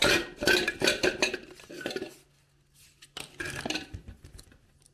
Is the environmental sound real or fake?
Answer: real